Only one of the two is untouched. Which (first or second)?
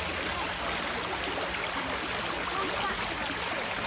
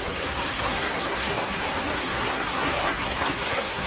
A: first